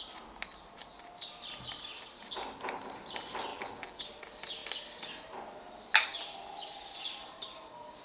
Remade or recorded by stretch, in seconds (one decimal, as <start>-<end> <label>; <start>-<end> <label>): 0.0-3.5 recorded; 3.5-4.0 remade; 4.0-8.0 recorded